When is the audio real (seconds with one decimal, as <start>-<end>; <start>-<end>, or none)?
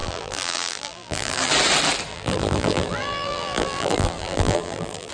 1.5-2.1